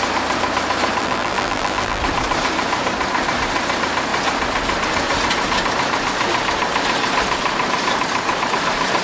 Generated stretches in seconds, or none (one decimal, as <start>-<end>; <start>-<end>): 1.0-2.0